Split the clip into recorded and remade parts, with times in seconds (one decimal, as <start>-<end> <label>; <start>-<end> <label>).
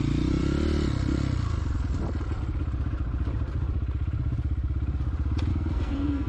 0.0-5.5 recorded; 5.5-6.3 remade